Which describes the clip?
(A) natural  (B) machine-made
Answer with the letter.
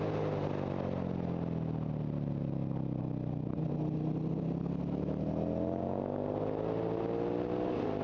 A